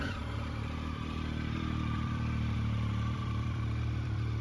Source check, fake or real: fake